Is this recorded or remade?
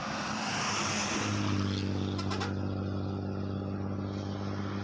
recorded